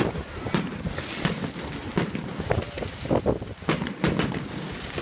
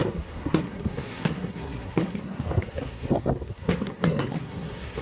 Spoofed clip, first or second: second